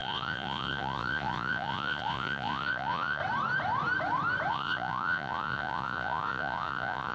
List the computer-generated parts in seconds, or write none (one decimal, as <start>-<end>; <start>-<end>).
0.0-3.2; 4.5-7.1